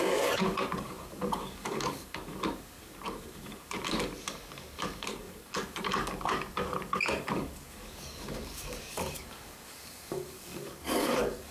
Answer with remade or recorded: remade